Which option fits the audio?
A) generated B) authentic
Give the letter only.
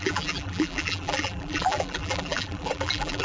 A